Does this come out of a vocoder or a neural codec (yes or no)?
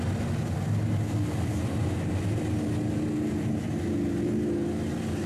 no